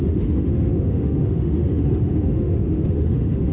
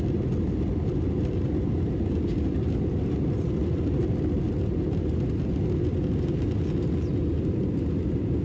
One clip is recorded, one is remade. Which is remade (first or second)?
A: first